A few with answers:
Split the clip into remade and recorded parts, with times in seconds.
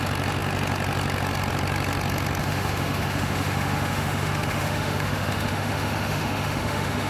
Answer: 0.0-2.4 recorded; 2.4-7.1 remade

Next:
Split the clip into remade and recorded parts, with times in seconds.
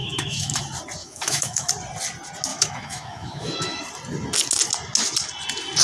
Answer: 0.0-0.6 remade; 0.6-1.0 recorded; 1.0-1.7 remade; 1.7-2.5 recorded; 2.5-3.8 remade; 3.8-5.8 recorded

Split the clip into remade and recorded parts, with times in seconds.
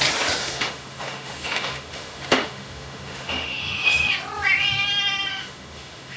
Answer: 0.0-0.4 recorded; 0.4-4.1 remade; 4.1-5.3 recorded; 5.3-6.2 remade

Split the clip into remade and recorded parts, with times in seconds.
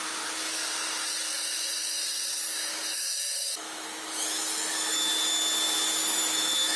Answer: 0.0-1.3 recorded; 1.3-2.0 remade; 2.0-2.5 recorded; 2.5-5.1 remade; 5.1-6.0 recorded; 6.0-6.8 remade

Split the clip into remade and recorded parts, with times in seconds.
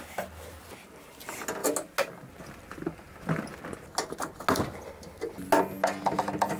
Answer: 0.0-6.6 recorded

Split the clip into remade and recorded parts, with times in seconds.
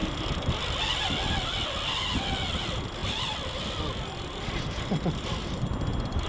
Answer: 0.0-6.3 recorded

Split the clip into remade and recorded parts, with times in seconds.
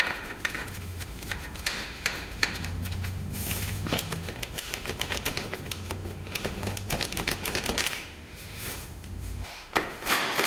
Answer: 0.0-10.5 remade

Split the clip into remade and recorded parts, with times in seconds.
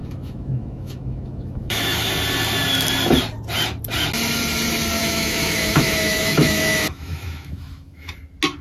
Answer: 0.0-2.1 remade; 2.1-5.0 recorded; 5.0-8.1 remade; 8.1-8.6 recorded